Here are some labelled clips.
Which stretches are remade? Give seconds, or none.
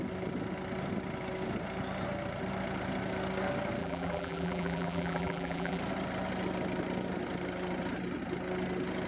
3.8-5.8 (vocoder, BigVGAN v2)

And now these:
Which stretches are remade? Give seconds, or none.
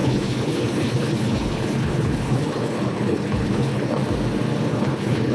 0.0-4.0 (codec, HILCodec); 4.7-5.3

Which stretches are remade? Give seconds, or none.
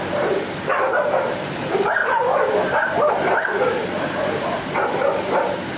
0.0-5.8 (vocoder, BigVGAN v2)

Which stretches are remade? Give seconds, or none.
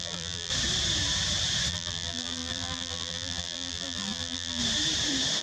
0.0-0.5 (vocoder, BigVGAN v2); 1.7-4.6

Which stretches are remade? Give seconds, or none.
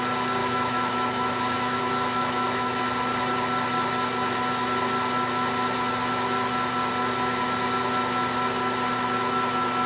0.4-2.8 (autoencoder, DAC-VAE)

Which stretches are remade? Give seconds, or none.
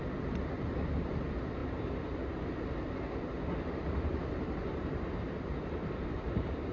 none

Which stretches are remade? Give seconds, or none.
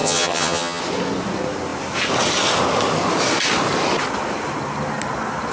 0.0-0.8 (vocoder, HiFi-GAN)